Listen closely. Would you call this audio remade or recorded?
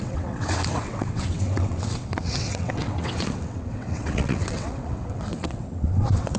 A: remade